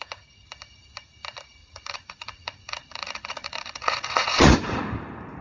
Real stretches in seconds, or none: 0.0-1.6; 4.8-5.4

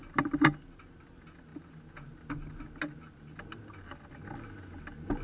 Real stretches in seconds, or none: 0.0-5.2

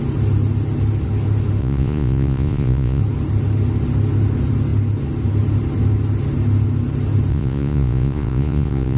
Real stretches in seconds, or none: 0.0-1.6; 3.0-7.3

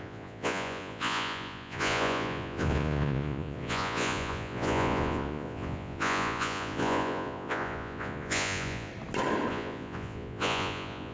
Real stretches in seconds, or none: 8.9-9.5

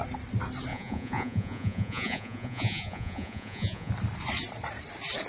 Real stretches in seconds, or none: 0.0-0.7; 3.9-5.3

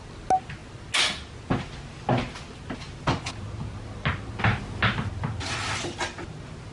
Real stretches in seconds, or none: 0.0-6.7

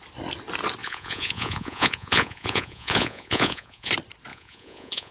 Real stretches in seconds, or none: 0.0-0.8; 3.9-4.3

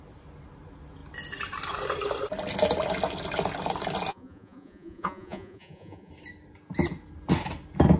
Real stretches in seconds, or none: 0.0-4.1; 6.1-8.0